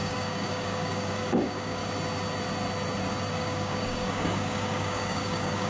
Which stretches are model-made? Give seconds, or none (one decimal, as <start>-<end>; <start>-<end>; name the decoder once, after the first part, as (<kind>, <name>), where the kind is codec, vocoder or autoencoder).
0.0-1.8 (codec, DAC); 3.3-5.7